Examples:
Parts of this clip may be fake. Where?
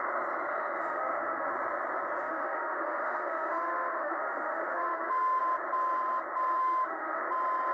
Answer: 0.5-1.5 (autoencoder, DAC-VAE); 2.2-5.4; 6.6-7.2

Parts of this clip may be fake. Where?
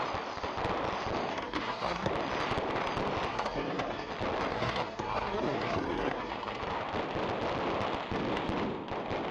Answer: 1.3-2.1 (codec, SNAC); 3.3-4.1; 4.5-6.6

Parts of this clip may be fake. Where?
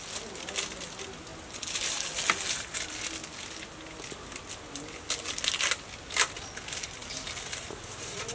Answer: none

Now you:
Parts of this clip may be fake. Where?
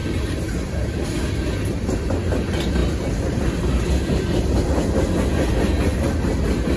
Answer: none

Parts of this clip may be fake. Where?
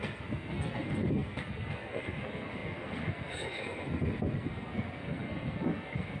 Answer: 0.0-6.2 (codec, SNAC)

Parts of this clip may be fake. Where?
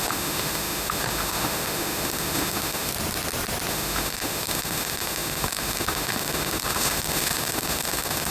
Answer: 0.0-2.9 (autoencoder, DAC-VAE); 3.7-8.3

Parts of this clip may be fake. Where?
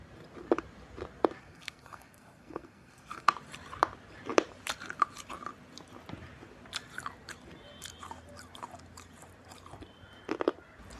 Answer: 1.4-3.3 (codec, SNAC)